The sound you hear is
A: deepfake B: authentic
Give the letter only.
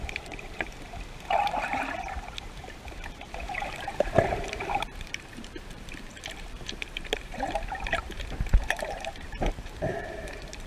A